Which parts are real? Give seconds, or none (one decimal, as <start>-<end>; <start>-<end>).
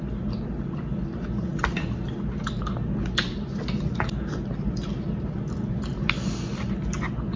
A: 0.0-7.4